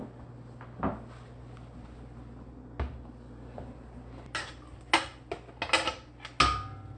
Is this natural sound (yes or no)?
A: yes